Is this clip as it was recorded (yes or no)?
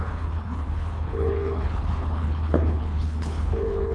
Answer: no